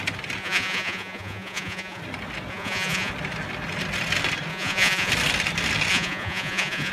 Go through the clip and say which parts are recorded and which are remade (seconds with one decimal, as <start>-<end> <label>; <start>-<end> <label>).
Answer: 0.0-0.4 recorded; 0.4-2.0 remade; 2.0-2.5 recorded; 2.5-3.1 remade; 3.1-4.5 recorded; 4.5-5.1 remade; 5.1-5.9 recorded; 5.9-6.9 remade